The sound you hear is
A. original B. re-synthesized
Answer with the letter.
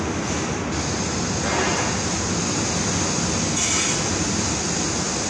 A